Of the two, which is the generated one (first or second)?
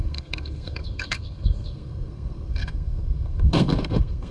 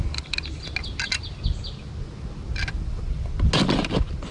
first